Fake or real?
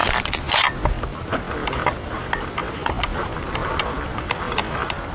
real